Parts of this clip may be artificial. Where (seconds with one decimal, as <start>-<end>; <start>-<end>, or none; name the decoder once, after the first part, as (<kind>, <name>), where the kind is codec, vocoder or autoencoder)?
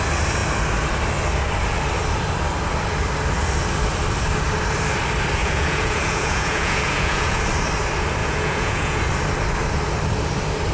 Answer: 5.4-7.4 (vocoder, Vocos); 8.2-9.0